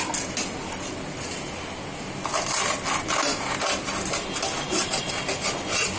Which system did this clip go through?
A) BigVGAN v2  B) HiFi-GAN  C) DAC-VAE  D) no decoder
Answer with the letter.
D